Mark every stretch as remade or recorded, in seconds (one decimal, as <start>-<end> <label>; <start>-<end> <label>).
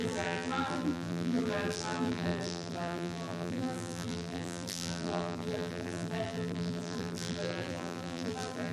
0.0-8.7 remade